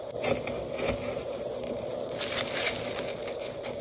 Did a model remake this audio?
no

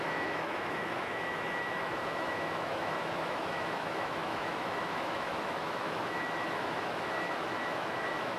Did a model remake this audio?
yes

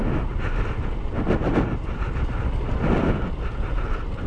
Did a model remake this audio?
no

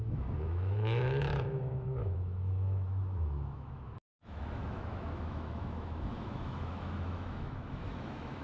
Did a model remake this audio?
yes